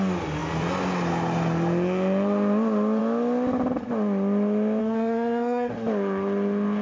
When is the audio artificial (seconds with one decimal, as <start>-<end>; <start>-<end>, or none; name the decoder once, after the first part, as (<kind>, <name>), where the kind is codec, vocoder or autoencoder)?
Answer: 4.8-5.7 (codec, SNAC)